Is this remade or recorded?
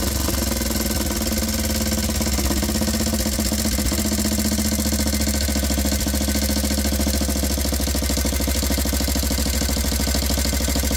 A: recorded